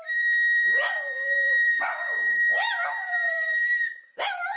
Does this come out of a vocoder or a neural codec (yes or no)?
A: yes